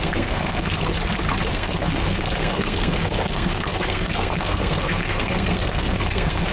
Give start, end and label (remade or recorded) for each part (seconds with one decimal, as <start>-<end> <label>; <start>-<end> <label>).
0.0-0.9 remade; 0.9-1.5 recorded; 1.5-6.5 remade